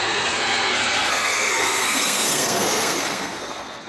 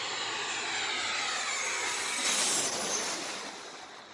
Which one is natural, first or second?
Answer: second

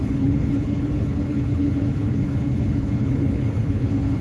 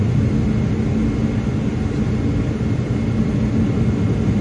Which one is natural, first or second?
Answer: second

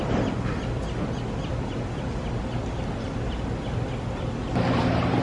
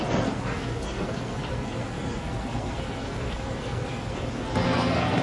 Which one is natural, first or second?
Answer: first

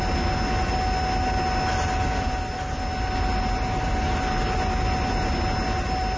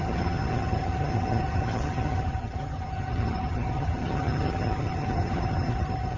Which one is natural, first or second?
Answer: first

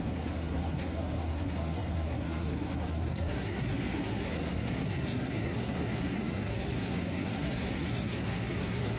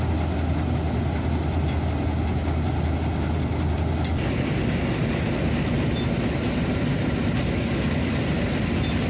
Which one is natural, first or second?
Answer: second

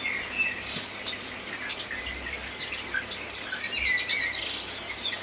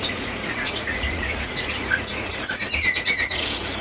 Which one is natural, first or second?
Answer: first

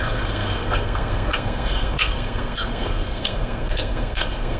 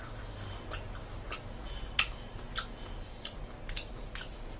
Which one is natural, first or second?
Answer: second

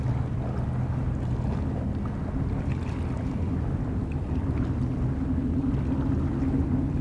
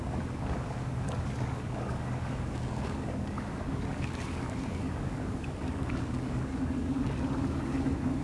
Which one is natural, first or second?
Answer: first